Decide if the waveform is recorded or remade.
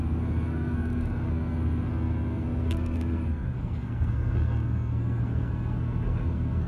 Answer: remade